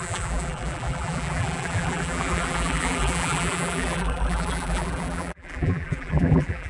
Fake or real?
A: fake